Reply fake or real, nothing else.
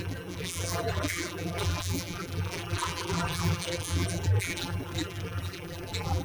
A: fake